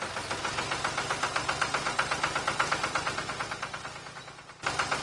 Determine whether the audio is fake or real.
real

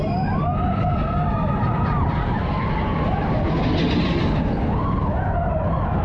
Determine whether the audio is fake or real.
real